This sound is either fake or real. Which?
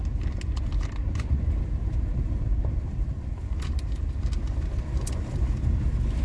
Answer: real